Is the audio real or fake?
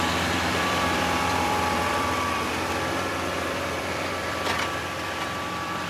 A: fake